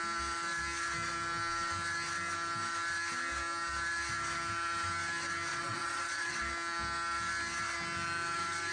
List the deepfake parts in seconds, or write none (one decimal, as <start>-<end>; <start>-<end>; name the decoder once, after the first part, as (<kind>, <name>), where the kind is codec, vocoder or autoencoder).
5.5-6.4 (vocoder, Vocos)